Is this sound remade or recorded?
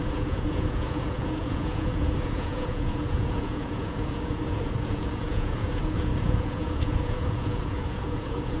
remade